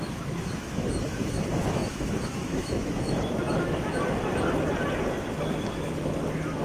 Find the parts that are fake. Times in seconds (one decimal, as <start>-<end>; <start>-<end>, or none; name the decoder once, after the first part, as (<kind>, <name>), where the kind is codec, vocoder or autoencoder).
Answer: 0.0-4.3 (autoencoder, DAC-VAE); 5.4-6.6